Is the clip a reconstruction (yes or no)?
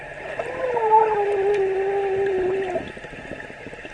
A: no